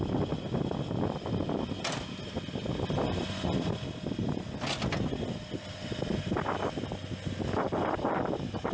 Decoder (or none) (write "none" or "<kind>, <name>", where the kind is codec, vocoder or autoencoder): none